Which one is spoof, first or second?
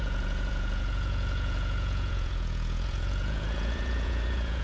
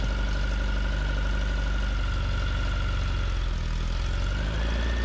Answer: first